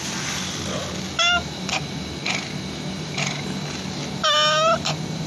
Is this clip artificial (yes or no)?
no